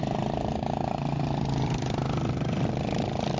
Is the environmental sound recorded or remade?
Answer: remade